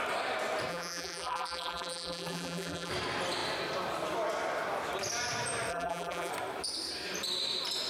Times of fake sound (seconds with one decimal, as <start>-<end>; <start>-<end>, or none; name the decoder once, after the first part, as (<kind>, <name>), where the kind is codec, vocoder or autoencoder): 0.7-2.9 (vocoder, BigVGAN v2); 5.7-6.3